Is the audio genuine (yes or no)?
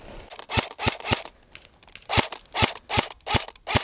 yes